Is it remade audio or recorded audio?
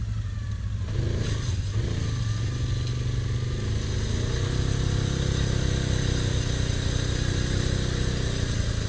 recorded